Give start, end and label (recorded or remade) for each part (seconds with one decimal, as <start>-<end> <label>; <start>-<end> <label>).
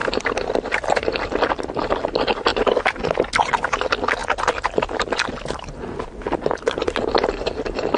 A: 0.0-1.1 remade; 1.1-4.2 recorded; 4.2-5.4 remade; 5.4-8.0 recorded